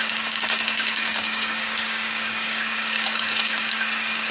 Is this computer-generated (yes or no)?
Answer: yes